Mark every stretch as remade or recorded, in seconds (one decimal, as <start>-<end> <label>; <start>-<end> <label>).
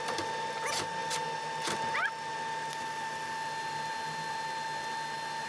0.0-5.5 recorded